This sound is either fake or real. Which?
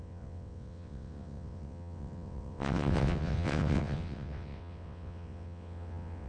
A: fake